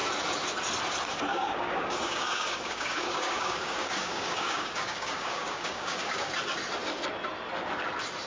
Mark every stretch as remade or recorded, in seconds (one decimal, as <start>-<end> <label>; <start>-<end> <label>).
0.0-1.3 recorded; 1.3-6.3 remade; 6.3-8.3 recorded